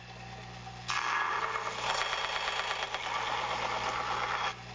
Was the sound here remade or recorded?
recorded